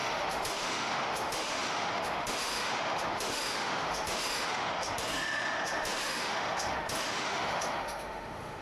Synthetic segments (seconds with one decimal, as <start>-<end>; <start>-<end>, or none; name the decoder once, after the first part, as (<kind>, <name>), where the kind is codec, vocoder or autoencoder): 0.0-8.6 (autoencoder, DAC-VAE)